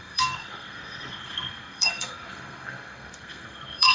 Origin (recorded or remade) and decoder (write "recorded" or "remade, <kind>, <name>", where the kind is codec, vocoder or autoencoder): remade, codec, SNAC